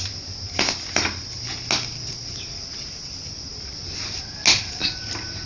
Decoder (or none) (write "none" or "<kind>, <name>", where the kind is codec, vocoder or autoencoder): none